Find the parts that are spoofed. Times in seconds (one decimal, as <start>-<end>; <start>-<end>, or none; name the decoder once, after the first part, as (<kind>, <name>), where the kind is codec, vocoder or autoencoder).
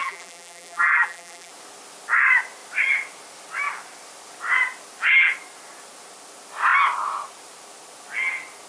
0.0-1.5 (vocoder, BigVGAN v2)